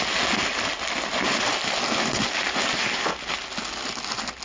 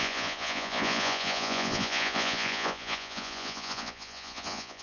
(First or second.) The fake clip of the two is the second